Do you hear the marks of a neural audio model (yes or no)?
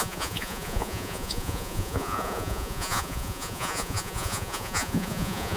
yes